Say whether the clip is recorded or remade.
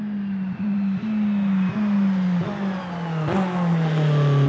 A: recorded